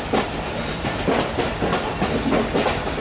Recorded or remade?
recorded